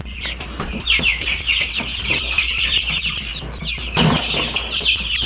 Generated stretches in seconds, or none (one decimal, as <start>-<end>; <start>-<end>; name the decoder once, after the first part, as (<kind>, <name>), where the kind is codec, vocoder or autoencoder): 0.0-1.1 (vocoder, BigVGAN v2); 1.7-3.3; 3.8-5.3